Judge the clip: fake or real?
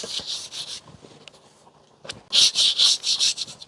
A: real